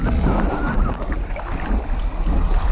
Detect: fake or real real